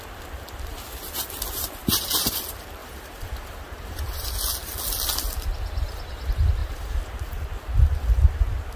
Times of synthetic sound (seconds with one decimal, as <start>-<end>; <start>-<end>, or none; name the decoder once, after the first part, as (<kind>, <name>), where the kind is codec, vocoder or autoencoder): 1.8-2.4 (vocoder, BigVGAN v2); 2.8-4.3; 6.6-7.2

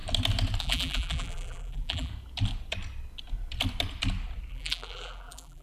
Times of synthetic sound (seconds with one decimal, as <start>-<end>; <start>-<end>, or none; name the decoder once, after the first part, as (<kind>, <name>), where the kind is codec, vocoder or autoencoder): 0.6-2.1 (vocoder, BigVGAN v2); 4.5-5.6

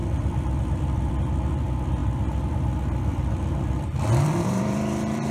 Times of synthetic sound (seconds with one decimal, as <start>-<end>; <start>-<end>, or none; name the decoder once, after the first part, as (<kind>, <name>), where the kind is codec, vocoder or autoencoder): 0.0-1.1 (vocoder, BigVGAN v2); 3.1-5.3

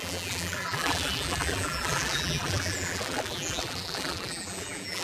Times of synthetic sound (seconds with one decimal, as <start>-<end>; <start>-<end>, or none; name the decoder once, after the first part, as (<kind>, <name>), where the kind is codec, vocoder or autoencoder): 0.0-5.0 (vocoder, BigVGAN v2)

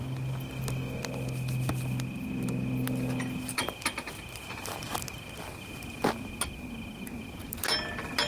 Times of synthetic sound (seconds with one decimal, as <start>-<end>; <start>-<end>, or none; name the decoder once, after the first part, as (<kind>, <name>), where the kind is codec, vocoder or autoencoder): none

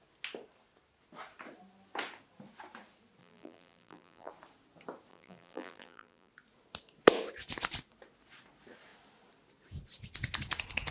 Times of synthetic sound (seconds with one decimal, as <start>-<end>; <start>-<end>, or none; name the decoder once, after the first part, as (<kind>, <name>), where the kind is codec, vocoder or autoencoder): 3.2-4.3 (vocoder, BigVGAN v2); 5.1-6.3

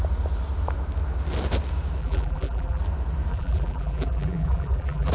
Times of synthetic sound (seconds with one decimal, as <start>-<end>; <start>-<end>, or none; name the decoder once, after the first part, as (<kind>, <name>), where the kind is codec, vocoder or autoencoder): 2.0-2.8 (vocoder, BigVGAN v2); 3.3-5.1